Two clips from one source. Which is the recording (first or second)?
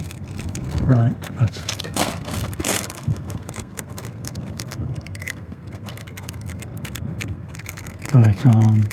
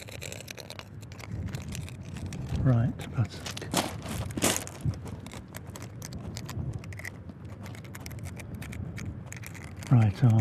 second